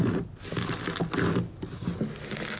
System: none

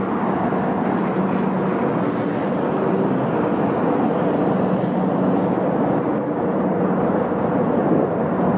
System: none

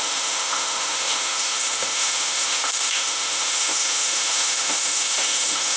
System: autoencoder, DAC-VAE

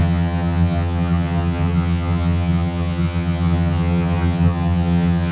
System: vocoder, HiFi-GAN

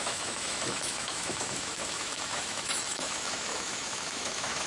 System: autoencoder, DAC-VAE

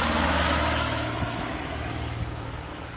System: autoencoder, DAC-VAE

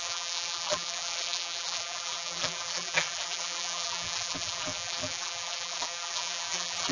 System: vocoder, BigVGAN v2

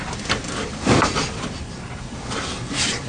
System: vocoder, BigVGAN v2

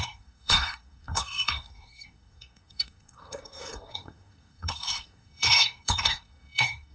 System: codec, SNAC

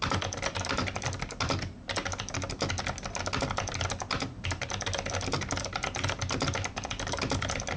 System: none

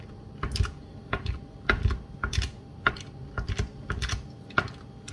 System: none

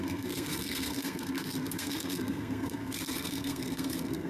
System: codec, SNAC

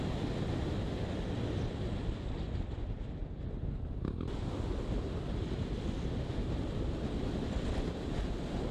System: none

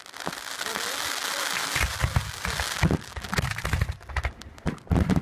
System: none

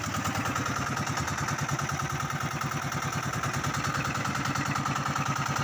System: none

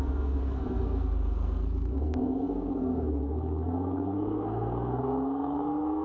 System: codec, SNAC